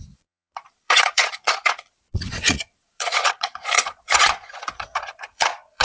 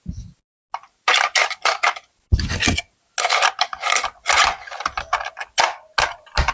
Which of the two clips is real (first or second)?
second